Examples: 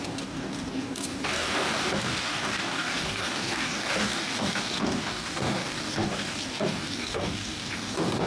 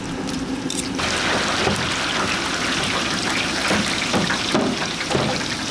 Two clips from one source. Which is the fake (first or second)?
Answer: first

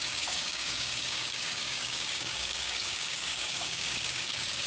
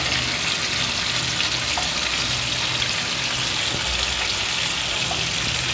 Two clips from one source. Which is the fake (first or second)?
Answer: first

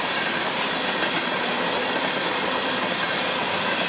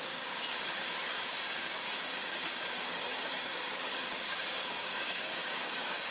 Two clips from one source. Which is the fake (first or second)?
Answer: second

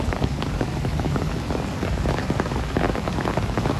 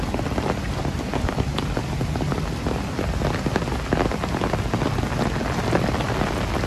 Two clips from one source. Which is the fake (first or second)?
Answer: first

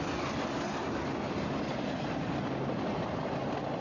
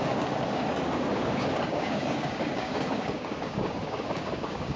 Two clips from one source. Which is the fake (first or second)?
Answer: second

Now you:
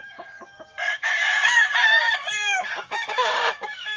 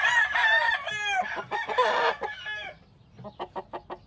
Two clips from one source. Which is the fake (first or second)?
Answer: first